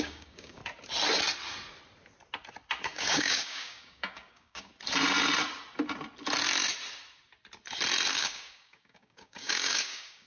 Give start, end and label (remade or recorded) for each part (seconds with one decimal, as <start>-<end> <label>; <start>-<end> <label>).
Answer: 0.0-0.6 remade; 0.6-2.8 recorded; 2.8-4.7 remade; 4.7-8.1 recorded; 8.1-10.3 remade